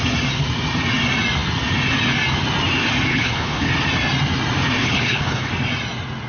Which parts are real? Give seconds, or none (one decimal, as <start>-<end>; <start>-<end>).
0.0-3.1; 3.7-4.8; 5.5-6.3